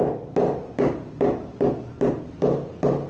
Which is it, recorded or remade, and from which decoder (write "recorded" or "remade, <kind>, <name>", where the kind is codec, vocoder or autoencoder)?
recorded